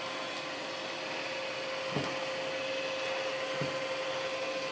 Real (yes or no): yes